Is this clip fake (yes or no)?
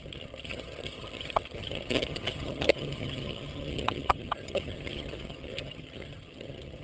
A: yes